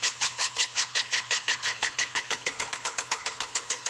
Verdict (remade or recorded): remade